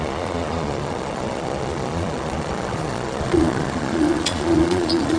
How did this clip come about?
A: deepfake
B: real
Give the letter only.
A